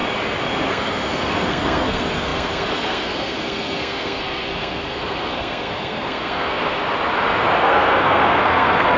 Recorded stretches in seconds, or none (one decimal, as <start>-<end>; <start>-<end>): 0.0-0.7; 6.8-7.6